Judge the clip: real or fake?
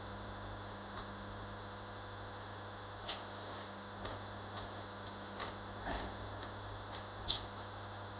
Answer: fake